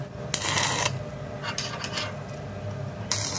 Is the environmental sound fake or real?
real